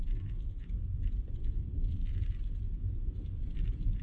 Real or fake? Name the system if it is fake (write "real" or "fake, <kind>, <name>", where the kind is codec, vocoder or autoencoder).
fake, vocoder, BigVGAN v2